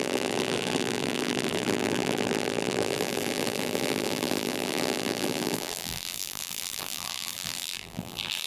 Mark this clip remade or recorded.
remade